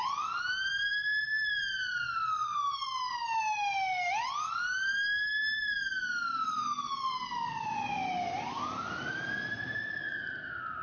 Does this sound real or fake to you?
real